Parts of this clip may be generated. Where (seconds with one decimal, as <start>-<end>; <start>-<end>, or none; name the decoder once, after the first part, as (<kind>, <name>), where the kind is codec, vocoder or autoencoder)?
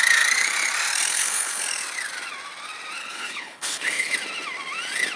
1.1-1.6 (codec, HILCodec); 3.0-4.1